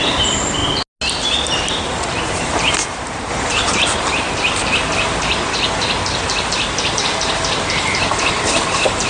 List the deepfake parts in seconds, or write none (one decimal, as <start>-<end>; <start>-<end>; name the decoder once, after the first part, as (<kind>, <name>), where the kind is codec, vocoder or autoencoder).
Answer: 0.0-0.6 (vocoder, BigVGAN v2); 2.2-9.1